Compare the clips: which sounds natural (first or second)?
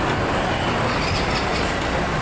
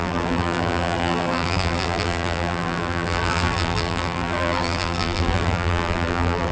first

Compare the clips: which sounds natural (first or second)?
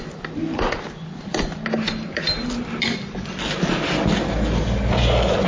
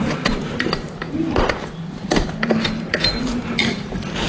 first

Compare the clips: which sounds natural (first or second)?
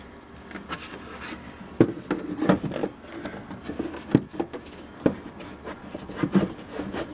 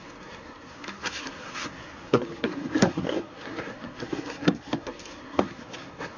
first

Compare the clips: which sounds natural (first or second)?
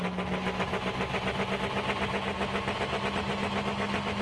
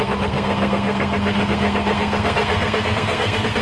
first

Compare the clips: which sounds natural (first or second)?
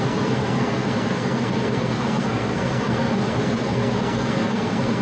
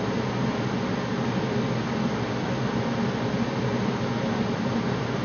second